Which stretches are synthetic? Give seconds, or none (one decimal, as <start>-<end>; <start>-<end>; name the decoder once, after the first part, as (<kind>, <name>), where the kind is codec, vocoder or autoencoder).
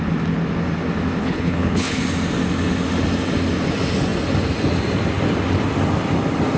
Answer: 1.2-2.0 (codec, HILCodec)